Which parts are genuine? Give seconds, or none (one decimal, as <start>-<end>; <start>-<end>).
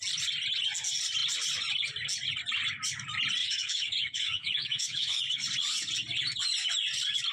0.0-3.4; 5.2-7.3